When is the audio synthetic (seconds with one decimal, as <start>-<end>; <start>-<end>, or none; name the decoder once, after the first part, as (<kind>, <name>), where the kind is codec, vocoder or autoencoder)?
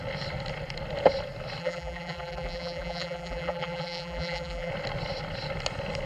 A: 1.6-4.7 (vocoder, BigVGAN v2)